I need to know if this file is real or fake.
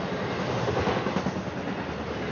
real